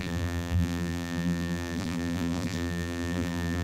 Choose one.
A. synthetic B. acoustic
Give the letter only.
A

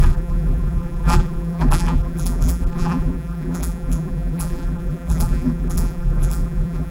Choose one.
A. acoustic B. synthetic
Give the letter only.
B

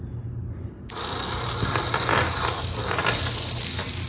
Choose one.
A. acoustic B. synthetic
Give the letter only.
A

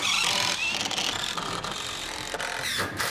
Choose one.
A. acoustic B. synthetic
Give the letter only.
A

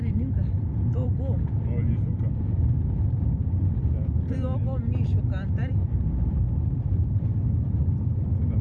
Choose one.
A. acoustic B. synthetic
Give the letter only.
B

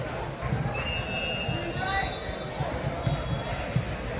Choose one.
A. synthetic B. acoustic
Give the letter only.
B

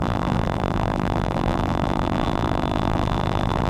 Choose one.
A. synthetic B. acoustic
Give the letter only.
A